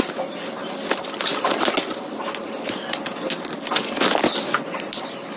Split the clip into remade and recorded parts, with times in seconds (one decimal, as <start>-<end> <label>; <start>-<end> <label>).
0.0-5.4 recorded